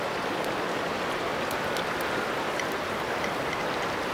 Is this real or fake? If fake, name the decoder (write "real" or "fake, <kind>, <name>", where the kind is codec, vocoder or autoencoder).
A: real